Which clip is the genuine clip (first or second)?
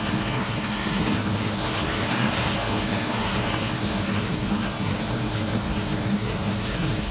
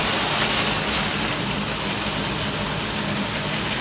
second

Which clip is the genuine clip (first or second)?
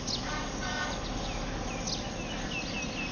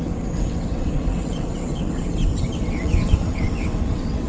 first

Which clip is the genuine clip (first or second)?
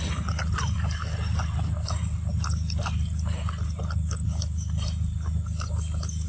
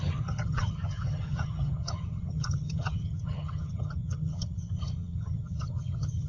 first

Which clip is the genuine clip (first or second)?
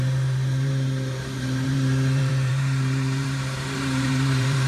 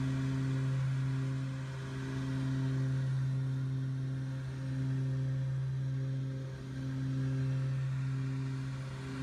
second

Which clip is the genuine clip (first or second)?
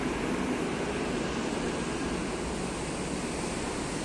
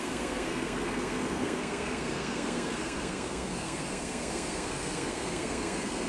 first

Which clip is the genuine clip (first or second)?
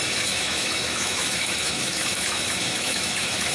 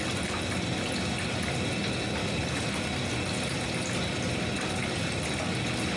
second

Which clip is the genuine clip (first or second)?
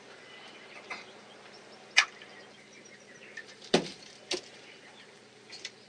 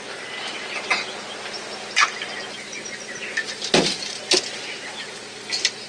second